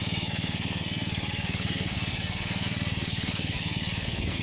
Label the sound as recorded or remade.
remade